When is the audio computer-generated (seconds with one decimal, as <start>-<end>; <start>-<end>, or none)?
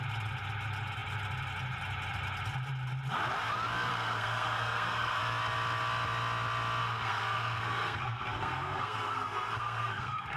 3.9-5.2; 6.8-10.4